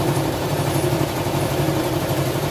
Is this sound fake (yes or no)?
yes